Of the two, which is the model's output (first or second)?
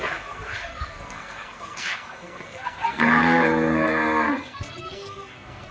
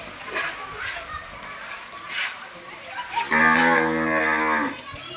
first